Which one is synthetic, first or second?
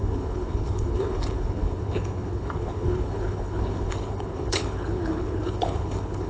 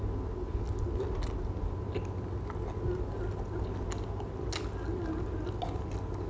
first